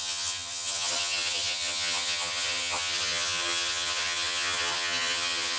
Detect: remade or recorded remade